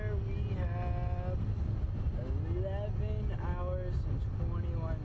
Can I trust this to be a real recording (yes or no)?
yes